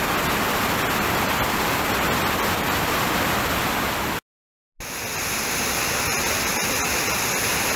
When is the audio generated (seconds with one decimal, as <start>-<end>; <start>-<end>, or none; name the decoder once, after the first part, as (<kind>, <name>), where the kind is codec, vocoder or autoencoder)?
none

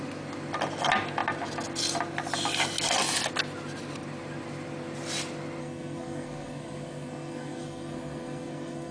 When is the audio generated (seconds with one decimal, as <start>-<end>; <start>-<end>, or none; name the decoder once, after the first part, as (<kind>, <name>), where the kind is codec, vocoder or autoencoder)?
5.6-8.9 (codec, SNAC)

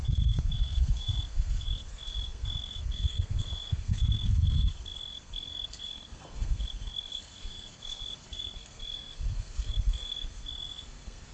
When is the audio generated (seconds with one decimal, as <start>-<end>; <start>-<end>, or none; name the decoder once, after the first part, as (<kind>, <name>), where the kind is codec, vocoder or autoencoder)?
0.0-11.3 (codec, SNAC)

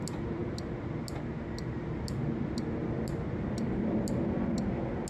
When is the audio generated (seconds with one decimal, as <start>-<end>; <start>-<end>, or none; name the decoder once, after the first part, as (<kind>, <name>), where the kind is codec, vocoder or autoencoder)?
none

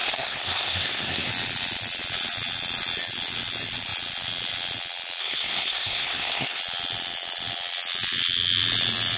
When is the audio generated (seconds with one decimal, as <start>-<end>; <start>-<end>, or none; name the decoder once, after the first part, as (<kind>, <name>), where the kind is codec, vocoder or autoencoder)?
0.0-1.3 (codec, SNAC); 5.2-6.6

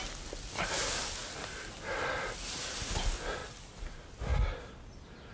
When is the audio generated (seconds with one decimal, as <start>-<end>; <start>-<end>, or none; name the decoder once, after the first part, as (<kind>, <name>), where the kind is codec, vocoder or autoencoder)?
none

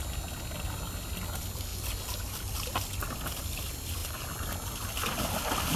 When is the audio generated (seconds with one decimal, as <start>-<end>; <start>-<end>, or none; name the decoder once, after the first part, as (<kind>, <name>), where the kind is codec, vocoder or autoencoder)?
none